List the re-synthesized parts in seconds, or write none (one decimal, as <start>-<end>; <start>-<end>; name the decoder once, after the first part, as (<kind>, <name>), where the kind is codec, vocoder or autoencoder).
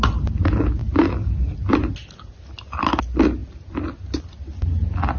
none